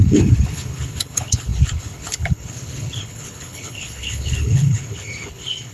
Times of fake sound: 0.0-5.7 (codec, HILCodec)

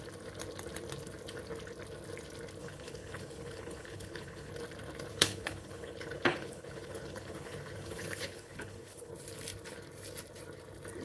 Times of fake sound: 2.6-4.5 (codec, HILCodec); 5.1-9.1

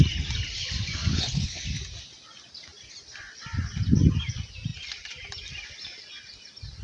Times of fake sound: 1.1-1.6 (codec, HILCodec)

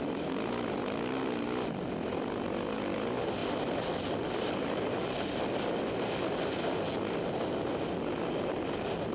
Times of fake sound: none

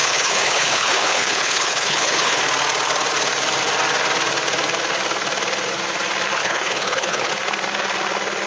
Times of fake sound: 0.0-2.4 (codec, HILCodec); 6.4-7.3

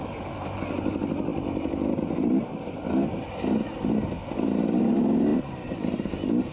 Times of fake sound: none

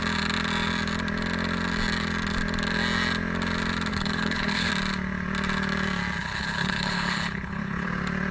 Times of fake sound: 3.9-4.7 (codec, HILCodec); 6.2-7.9